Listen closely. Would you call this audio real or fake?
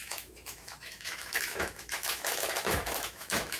fake